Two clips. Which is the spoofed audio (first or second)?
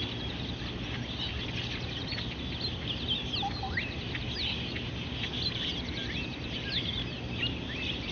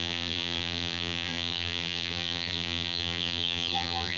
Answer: second